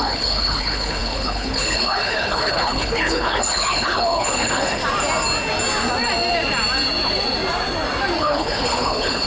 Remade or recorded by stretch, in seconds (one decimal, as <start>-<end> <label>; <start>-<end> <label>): 0.0-4.8 remade; 4.8-8.2 recorded; 8.2-9.3 remade